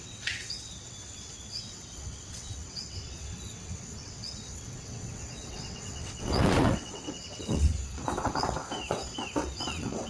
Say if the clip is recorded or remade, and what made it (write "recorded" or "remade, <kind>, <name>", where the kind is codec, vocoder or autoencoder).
remade, vocoder, WaveNeXt